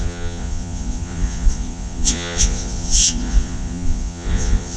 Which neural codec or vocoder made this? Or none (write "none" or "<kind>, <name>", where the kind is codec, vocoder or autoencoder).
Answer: vocoder, Vocos